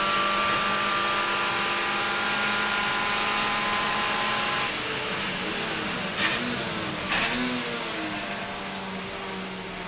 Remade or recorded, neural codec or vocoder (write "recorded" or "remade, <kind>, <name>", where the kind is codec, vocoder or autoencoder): recorded